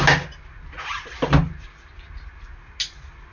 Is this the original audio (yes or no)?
yes